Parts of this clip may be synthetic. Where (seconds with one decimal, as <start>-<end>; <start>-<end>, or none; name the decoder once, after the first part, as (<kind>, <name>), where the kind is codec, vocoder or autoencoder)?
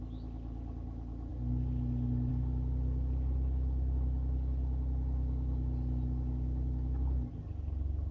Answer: none